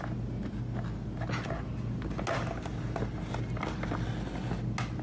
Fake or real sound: real